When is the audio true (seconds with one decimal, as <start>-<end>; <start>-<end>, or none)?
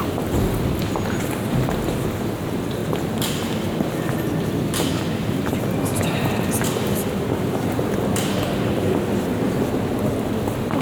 0.0-10.8